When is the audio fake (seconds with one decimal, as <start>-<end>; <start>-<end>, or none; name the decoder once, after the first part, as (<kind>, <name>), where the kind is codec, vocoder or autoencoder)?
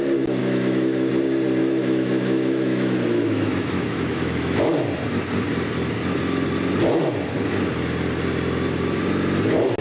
0.4-1.1 (autoencoder, DAC-VAE); 1.6-4.6